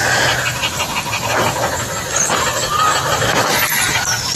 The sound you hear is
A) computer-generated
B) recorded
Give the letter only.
B